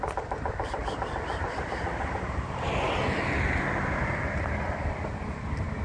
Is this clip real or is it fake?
real